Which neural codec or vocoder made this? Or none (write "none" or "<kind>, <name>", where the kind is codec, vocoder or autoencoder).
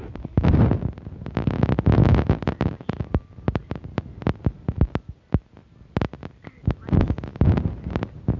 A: none